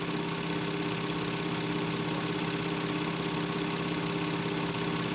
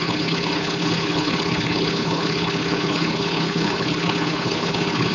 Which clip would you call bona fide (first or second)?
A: first